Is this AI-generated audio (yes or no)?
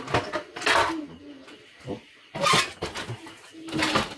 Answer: no